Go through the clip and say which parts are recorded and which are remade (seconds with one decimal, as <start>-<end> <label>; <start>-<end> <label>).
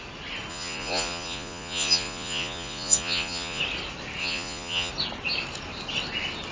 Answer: 0.0-0.5 recorded; 0.5-3.6 remade; 3.6-4.2 recorded; 4.2-4.9 remade; 4.9-6.5 recorded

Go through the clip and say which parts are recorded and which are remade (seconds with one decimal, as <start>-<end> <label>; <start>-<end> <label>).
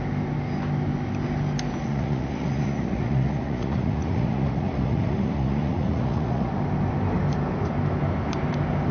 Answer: 0.0-1.8 recorded; 1.8-6.5 remade; 6.5-8.9 recorded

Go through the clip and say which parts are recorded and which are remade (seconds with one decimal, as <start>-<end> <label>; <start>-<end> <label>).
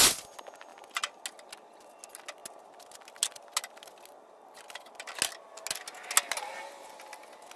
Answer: 0.0-7.6 recorded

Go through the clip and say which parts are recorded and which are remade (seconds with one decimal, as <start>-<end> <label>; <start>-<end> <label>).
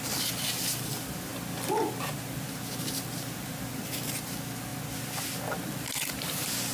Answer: 0.0-6.7 recorded